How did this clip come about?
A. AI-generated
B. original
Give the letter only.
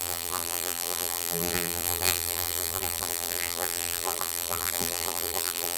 A